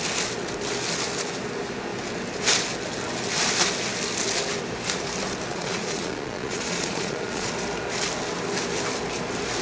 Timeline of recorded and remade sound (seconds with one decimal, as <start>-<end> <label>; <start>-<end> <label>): 0.0-5.5 recorded; 5.5-7.5 remade; 7.5-9.6 recorded